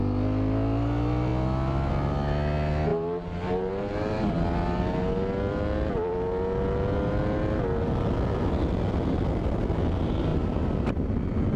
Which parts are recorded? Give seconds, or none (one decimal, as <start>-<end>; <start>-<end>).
0.0-2.9; 4.3-10.3; 11.1-11.6